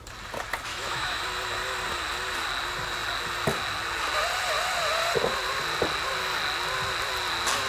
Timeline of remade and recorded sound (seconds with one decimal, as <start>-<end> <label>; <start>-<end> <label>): 0.0-0.7 recorded; 0.7-1.2 remade; 1.2-7.7 recorded